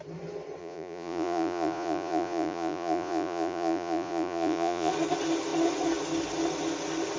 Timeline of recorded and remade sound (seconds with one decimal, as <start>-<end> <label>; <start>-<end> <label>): 0.0-0.6 recorded; 0.6-4.9 remade; 4.9-7.2 recorded